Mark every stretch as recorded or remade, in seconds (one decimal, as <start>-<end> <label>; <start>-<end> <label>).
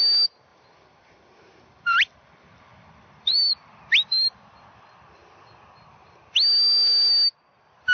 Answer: 0.0-0.5 recorded; 0.5-3.5 remade; 3.5-7.9 recorded